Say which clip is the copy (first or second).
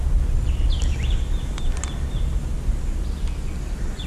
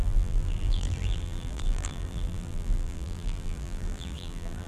second